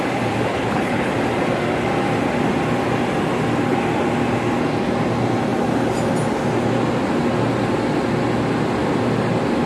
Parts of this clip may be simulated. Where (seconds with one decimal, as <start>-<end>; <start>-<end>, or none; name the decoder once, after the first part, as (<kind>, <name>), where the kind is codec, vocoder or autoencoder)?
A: 0.5-1.1 (codec, HILCodec)